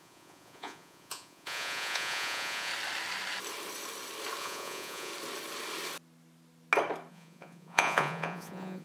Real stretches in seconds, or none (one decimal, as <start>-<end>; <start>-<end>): 2.7-4.4; 5.1-7.1